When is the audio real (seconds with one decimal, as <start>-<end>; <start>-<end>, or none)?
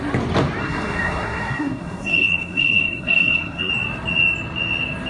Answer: 0.0-0.6; 3.7-5.1